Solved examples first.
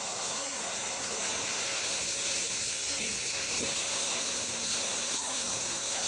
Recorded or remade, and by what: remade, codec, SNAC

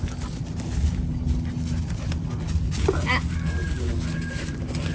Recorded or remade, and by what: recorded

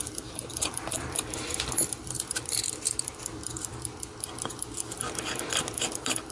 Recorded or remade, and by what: remade, vocoder, BigVGAN v2